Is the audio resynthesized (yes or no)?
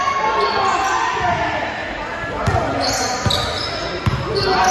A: no